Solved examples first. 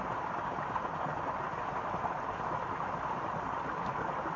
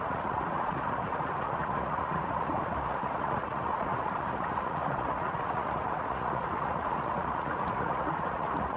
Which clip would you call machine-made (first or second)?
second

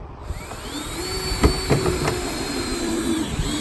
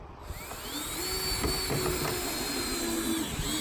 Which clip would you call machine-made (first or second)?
first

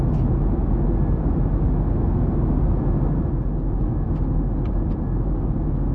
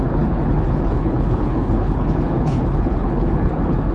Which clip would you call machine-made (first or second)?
second